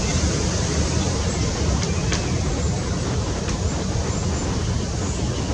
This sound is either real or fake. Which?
real